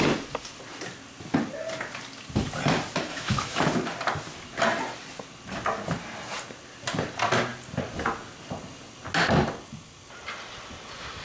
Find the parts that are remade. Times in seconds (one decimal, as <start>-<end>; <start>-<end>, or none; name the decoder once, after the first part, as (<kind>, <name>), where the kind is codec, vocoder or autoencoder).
3.1-3.6 (autoencoder, DAC-VAE)